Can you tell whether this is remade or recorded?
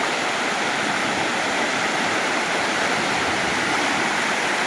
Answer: recorded